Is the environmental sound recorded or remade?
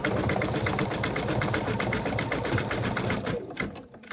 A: recorded